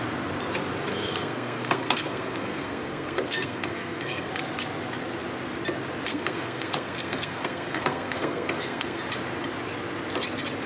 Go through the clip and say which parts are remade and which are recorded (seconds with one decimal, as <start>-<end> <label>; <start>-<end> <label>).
0.0-0.9 recorded; 0.9-4.3 remade; 4.3-6.1 recorded; 6.1-9.0 remade; 9.0-10.7 recorded